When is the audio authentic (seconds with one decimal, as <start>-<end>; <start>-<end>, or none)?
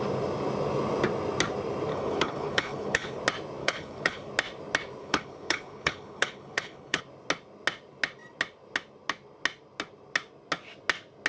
0.0-1.9; 3.2-3.6; 4.3-5.0; 7.0-11.3